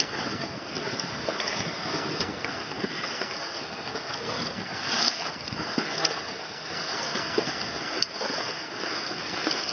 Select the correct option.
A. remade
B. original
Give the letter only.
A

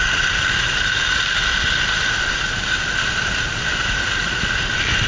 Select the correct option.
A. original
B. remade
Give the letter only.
A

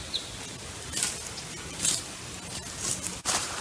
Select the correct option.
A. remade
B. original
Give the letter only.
B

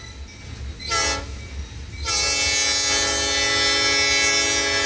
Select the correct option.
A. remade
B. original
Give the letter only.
B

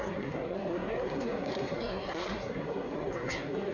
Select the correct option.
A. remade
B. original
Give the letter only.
A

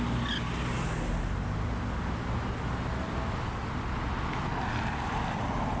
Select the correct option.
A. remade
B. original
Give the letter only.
B